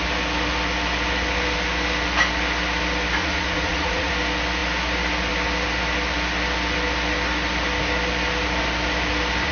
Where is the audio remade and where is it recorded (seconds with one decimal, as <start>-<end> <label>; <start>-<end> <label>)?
0.0-3.2 recorded; 3.2-4.1 remade; 4.1-9.5 recorded

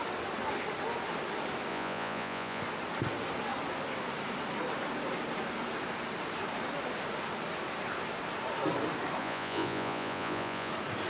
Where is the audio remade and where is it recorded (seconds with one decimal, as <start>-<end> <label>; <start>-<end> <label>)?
0.0-1.7 recorded; 1.7-2.6 remade; 2.6-9.2 recorded; 9.2-10.7 remade; 10.7-11.1 recorded

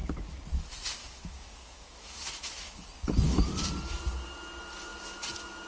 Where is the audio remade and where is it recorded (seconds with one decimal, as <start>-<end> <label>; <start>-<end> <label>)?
0.0-1.0 recorded; 1.0-2.8 remade; 2.8-5.7 recorded